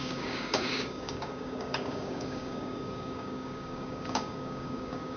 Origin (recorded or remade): remade